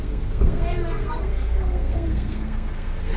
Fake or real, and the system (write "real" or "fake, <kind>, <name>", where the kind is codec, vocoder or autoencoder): fake, codec, SNAC